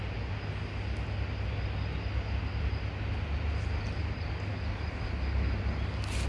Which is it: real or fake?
real